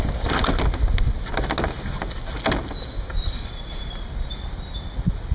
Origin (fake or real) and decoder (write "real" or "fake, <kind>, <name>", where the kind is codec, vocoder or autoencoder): real